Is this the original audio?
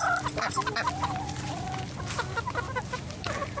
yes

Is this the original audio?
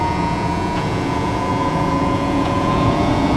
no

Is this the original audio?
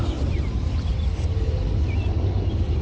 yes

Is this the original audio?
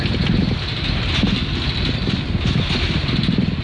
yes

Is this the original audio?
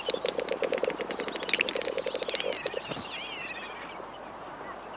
yes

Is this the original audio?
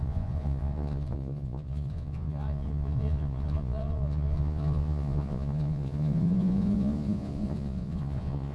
no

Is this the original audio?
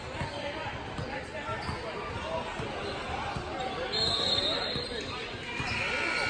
yes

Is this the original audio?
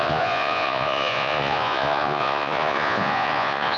no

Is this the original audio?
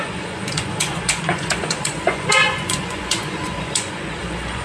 no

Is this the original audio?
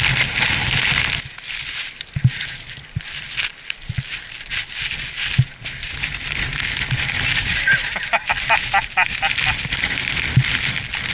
yes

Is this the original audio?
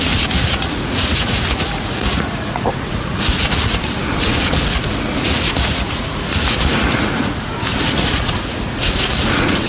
no